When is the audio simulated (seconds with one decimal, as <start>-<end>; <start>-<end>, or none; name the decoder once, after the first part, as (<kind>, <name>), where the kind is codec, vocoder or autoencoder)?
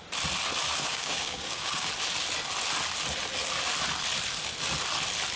0.8-1.9 (codec, DAC)